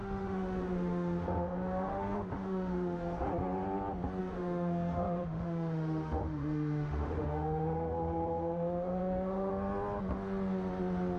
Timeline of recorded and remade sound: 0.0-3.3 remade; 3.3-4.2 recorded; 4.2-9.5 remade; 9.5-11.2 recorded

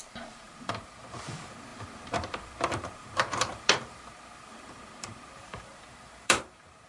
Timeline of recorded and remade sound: 0.0-6.9 remade

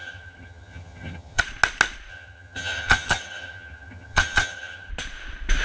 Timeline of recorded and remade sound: 0.0-1.4 remade; 1.4-2.1 recorded; 2.1-4.9 remade; 4.9-5.6 recorded

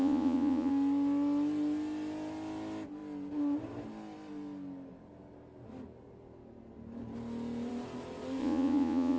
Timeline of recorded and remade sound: 0.0-0.7 remade; 0.7-8.4 recorded; 8.4-9.2 remade

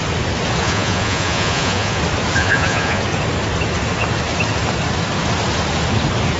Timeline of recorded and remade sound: 0.0-0.6 recorded; 0.6-2.0 remade; 2.0-2.4 recorded; 2.4-3.0 remade; 3.0-6.4 recorded